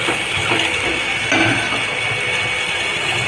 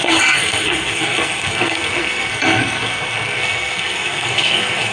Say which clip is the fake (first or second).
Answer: second